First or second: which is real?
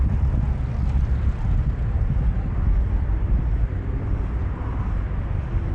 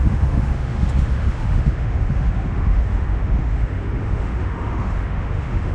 first